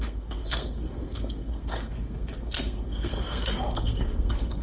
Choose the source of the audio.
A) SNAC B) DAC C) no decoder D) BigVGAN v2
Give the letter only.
A